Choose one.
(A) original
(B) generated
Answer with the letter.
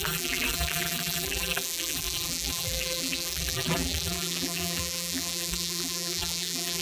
B